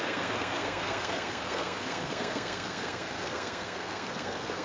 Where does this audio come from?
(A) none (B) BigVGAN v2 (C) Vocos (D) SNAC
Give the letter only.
D